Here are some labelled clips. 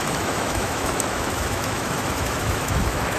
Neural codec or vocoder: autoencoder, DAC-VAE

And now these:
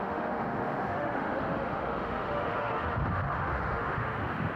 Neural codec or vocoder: autoencoder, DAC-VAE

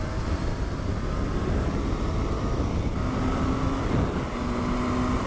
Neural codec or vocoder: none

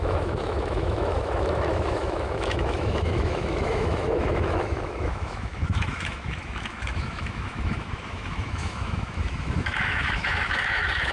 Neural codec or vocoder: autoencoder, DAC-VAE